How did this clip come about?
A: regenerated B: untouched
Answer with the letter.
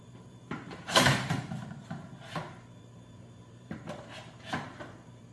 A